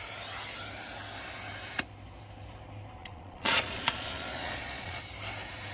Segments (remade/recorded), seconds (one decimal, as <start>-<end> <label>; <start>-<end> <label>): 0.0-3.0 recorded; 3.0-5.0 remade; 5.0-5.7 recorded